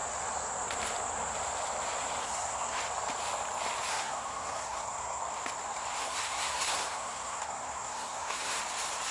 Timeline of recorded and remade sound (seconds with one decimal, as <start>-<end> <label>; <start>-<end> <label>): 0.0-2.2 recorded; 2.2-2.8 remade; 2.8-3.9 recorded; 3.9-5.2 remade; 5.2-6.0 recorded; 6.0-8.6 remade; 8.6-9.1 recorded